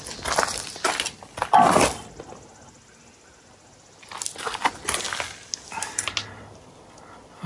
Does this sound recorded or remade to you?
recorded